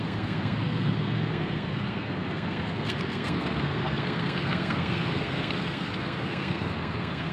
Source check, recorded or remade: remade